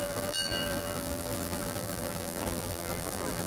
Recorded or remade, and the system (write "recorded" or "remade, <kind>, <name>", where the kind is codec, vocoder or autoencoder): remade, vocoder, BigVGAN v2